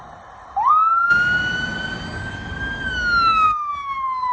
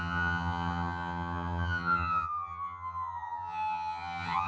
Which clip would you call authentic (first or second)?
first